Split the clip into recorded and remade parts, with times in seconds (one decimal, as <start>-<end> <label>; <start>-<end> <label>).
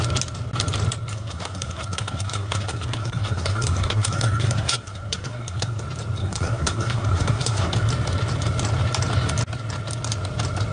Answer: 0.0-1.1 recorded; 1.1-5.8 remade; 5.8-6.2 recorded; 6.2-7.7 remade; 7.7-10.7 recorded